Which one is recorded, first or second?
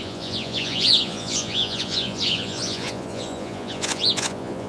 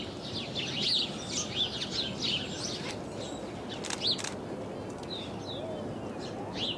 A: second